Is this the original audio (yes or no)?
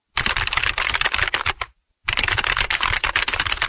yes